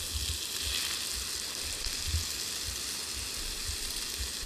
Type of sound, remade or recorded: recorded